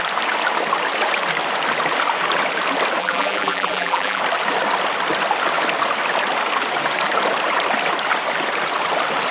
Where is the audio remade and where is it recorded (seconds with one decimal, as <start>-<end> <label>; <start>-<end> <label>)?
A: 0.0-3.0 recorded; 3.0-4.2 remade; 4.2-9.3 recorded